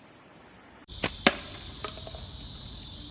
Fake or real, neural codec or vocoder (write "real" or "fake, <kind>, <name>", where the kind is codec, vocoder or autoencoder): fake, vocoder, BigVGAN v2